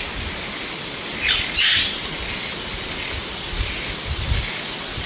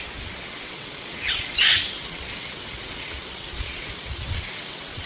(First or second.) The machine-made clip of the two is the second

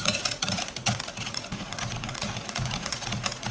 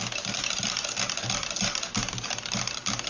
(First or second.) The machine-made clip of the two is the first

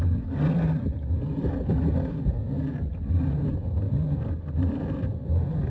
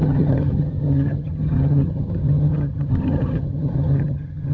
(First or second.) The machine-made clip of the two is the second